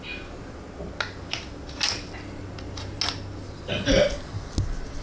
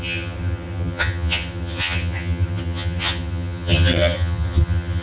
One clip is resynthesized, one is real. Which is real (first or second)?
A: first